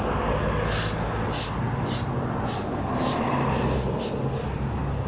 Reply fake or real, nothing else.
real